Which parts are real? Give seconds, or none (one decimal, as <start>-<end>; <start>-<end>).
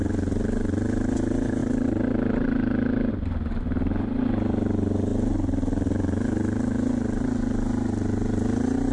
0.0-8.9